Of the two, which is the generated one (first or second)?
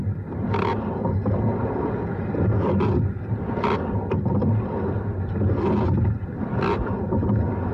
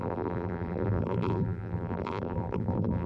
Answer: second